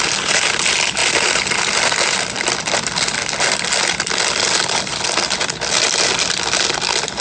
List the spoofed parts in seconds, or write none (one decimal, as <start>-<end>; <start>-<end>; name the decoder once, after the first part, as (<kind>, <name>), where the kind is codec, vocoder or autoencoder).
none